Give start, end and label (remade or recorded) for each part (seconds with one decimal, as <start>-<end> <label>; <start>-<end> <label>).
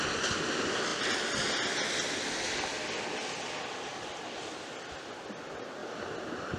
0.0-5.8 recorded; 5.8-6.6 remade